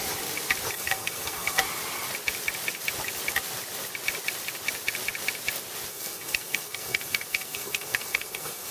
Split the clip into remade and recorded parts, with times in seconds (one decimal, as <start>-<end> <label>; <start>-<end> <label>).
0.0-0.7 recorded; 0.7-1.6 remade; 1.6-5.9 recorded; 5.9-8.7 remade

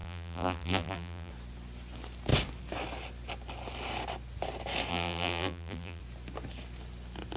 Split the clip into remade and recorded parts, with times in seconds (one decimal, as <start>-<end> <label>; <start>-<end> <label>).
0.0-1.3 remade; 1.3-4.9 recorded; 4.9-6.0 remade; 6.0-7.4 recorded

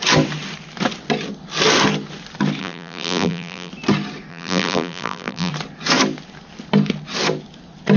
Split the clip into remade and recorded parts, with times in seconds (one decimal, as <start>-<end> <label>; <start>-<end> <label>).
0.0-2.6 recorded; 2.6-3.7 remade; 3.7-4.3 recorded; 4.3-5.5 remade; 5.5-8.0 recorded

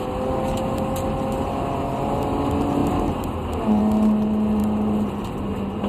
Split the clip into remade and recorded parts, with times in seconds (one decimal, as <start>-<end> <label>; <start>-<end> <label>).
0.0-5.9 recorded

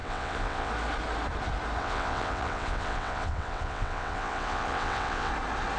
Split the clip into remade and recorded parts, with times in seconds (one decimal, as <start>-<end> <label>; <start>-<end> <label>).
0.0-0.7 remade; 0.7-1.8 recorded; 1.8-5.3 remade; 5.3-5.8 recorded

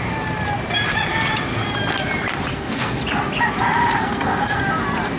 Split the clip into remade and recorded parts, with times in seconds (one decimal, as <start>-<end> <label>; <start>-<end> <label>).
0.0-2.5 recorded; 2.5-3.0 remade; 3.0-4.0 recorded; 4.0-4.6 remade; 4.6-5.2 recorded

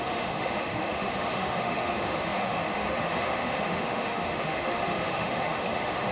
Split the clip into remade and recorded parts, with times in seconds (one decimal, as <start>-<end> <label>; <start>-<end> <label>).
0.0-6.1 remade

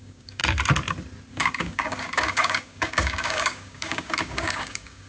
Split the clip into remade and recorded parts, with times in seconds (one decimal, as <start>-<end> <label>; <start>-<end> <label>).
0.0-0.4 remade; 0.4-1.3 recorded; 1.3-5.1 remade